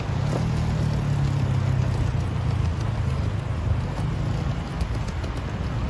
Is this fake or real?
real